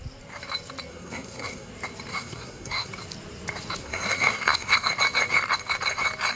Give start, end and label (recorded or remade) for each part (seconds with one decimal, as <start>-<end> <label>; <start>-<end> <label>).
0.0-0.9 recorded; 0.9-1.7 remade; 1.7-2.1 recorded; 2.1-2.9 remade; 2.9-3.8 recorded; 3.8-4.9 remade; 4.9-6.4 recorded